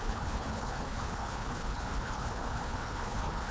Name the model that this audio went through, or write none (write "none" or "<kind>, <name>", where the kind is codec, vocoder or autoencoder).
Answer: codec, HILCodec